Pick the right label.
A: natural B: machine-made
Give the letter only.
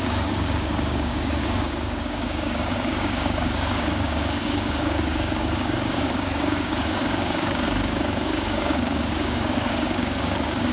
B